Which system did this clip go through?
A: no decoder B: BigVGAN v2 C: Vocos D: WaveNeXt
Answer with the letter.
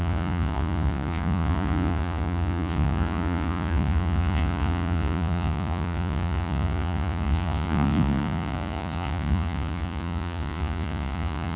C